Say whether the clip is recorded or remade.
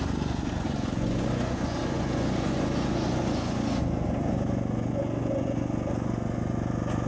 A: remade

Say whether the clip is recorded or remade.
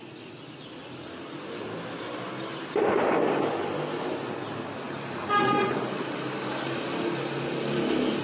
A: recorded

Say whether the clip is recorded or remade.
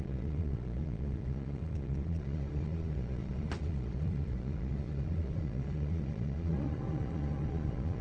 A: remade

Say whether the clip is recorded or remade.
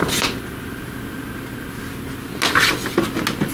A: recorded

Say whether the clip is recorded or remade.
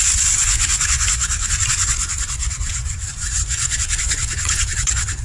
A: remade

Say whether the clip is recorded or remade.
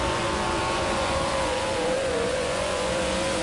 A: remade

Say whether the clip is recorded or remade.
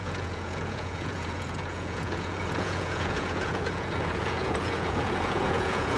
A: remade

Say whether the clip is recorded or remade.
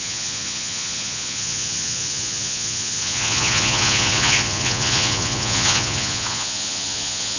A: remade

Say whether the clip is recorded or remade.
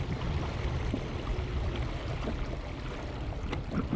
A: recorded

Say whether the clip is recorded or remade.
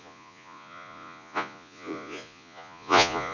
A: remade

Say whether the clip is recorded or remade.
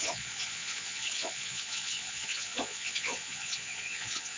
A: remade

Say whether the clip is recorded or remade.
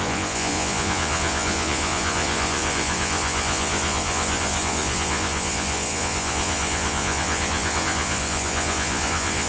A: remade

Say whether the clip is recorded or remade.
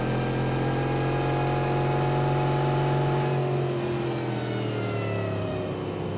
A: recorded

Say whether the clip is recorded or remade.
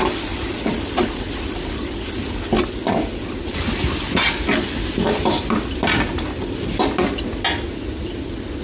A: recorded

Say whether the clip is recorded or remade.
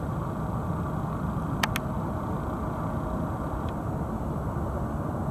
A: recorded